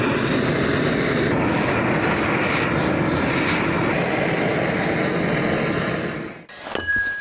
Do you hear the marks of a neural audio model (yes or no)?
no